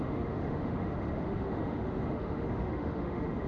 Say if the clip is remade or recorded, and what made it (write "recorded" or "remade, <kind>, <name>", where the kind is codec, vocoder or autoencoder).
remade, autoencoder, DAC-VAE